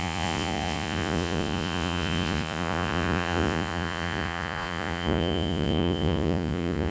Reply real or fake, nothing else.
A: fake